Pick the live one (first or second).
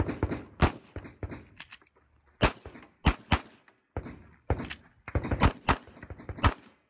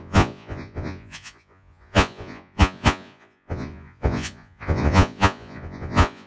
first